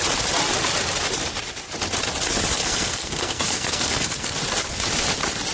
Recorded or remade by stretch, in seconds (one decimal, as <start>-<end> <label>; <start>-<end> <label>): 0.0-2.6 recorded; 2.6-4.3 remade; 4.3-5.5 recorded